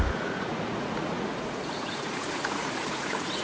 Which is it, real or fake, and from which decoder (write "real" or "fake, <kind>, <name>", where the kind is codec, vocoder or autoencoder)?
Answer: fake, vocoder, Vocos